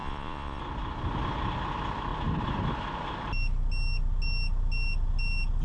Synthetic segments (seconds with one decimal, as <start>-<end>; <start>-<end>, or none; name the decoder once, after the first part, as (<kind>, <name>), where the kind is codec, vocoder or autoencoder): 0.0-0.6 (vocoder, Vocos)